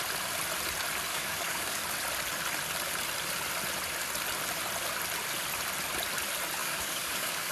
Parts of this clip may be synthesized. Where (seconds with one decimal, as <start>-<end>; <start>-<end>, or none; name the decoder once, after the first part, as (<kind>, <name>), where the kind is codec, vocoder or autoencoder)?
1.1-1.8 (codec, DAC); 6.6-7.5